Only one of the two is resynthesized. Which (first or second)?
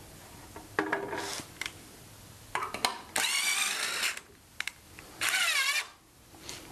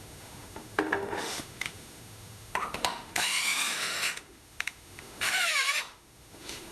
second